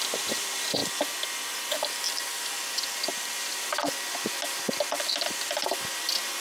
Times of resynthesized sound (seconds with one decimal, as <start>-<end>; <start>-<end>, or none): none